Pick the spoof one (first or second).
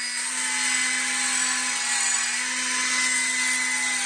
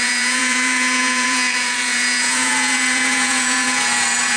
second